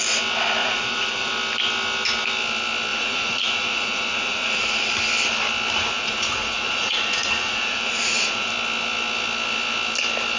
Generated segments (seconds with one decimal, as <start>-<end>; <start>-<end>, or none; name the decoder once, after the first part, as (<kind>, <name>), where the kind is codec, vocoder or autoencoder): 0.6-1.3 (vocoder, Vocos); 2.9-4.9; 5.8-8.5